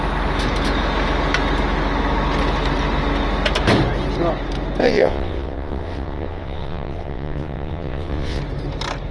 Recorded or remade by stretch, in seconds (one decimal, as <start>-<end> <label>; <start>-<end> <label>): 0.0-4.8 recorded; 4.8-8.4 remade; 8.4-9.1 recorded